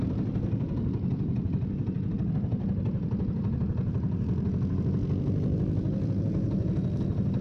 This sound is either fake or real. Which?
real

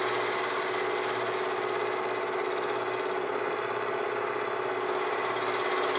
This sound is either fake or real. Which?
real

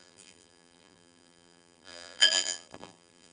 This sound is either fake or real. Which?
fake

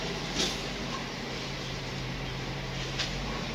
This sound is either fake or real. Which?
fake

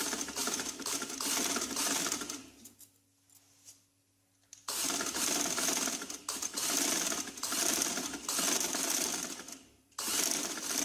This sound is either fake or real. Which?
fake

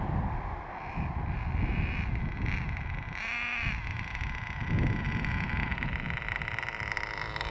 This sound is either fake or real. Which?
real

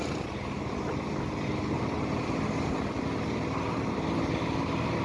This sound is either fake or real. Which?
real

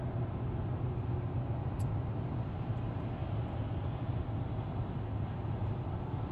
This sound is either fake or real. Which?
real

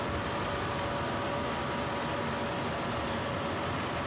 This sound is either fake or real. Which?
real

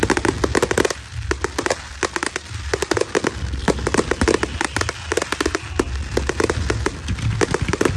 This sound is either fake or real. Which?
real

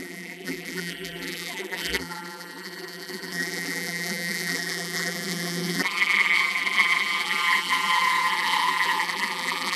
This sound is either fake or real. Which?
fake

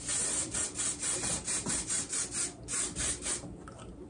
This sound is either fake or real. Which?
real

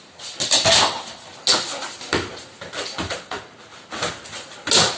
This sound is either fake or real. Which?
real